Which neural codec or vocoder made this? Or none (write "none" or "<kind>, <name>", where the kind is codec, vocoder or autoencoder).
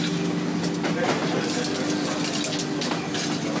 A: none